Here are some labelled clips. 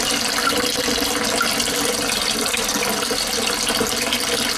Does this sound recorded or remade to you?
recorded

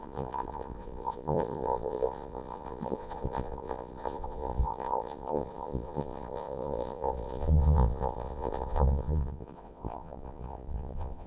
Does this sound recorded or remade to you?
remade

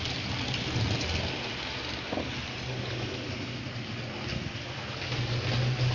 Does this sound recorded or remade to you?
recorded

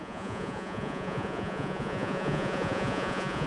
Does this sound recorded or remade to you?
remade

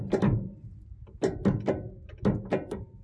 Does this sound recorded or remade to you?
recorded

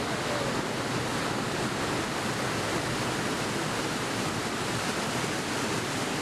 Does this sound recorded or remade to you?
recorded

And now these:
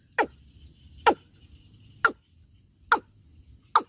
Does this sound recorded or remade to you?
recorded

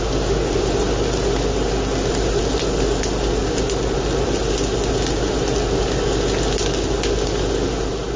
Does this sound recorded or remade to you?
recorded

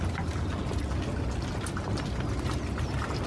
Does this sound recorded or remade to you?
recorded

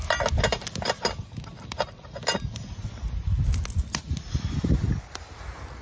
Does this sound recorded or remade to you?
recorded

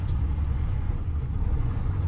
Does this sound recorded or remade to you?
remade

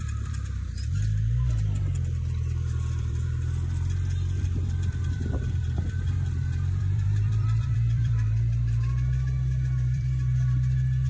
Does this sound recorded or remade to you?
remade